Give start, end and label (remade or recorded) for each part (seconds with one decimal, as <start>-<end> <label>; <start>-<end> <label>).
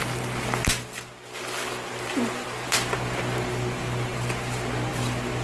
0.0-5.4 recorded